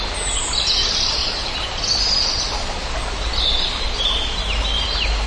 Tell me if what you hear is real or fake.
real